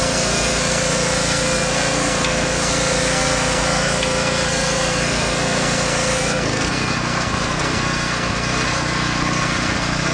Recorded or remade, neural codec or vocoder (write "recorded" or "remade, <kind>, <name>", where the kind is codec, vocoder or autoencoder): remade, codec, SNAC